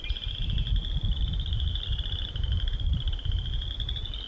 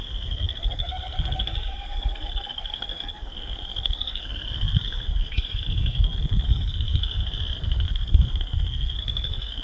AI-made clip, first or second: second